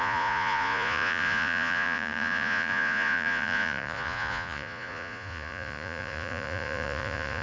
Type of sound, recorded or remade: remade